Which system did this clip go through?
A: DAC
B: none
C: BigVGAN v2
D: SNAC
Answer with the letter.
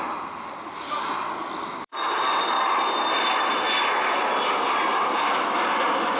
B